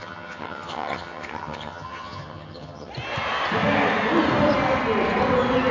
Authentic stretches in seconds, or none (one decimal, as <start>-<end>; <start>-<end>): 2.9-5.7